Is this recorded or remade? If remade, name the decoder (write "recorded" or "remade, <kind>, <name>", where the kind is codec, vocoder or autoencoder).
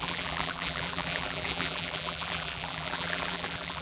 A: remade, vocoder, BigVGAN v2